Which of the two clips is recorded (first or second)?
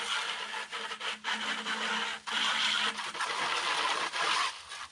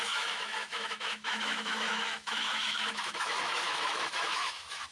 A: first